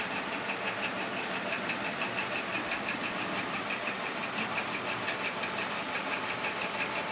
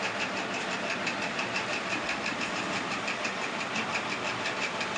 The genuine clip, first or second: first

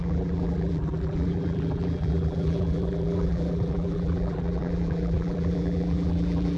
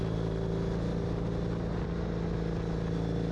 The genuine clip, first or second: second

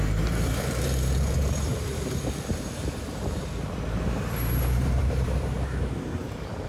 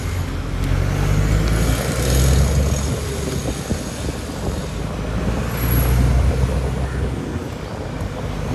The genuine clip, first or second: second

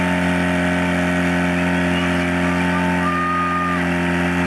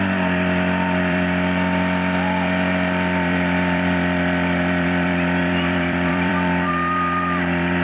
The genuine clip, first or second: first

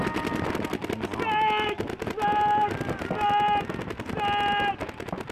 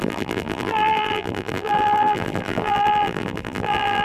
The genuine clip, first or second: first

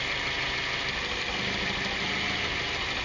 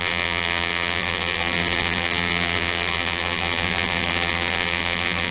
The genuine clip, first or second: first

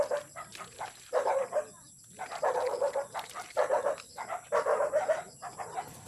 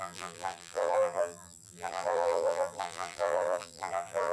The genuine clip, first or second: first